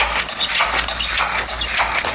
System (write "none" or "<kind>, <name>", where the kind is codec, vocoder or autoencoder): none